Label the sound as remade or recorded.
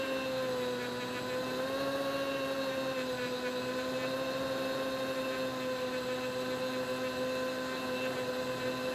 recorded